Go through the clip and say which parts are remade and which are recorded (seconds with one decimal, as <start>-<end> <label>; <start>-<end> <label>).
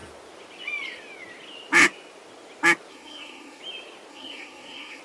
0.0-2.9 recorded; 2.9-3.6 remade; 3.6-4.1 recorded; 4.1-5.0 remade